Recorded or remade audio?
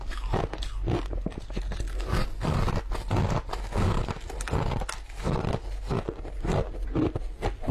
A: recorded